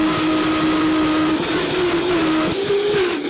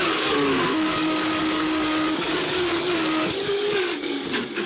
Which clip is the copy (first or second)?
second